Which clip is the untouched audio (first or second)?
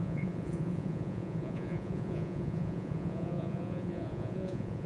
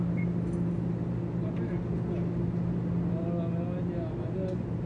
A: second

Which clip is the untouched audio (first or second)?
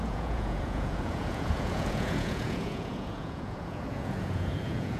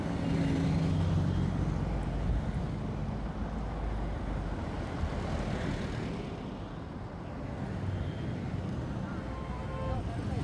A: second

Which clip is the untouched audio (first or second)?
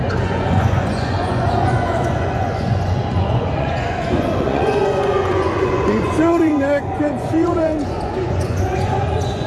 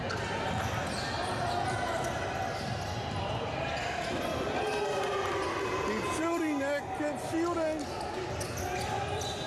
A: second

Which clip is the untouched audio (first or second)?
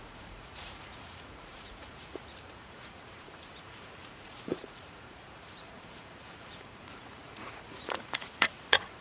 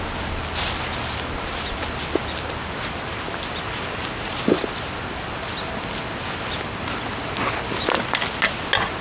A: second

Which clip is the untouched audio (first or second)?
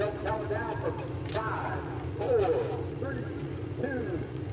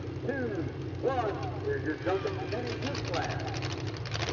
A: second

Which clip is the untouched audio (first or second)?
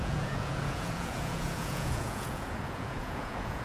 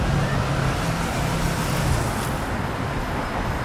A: second